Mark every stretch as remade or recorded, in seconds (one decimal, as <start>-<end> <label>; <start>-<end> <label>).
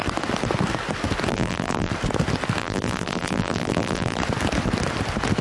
0.0-1.3 recorded; 1.3-1.9 remade; 1.9-2.6 recorded; 2.6-4.2 remade; 4.2-5.4 recorded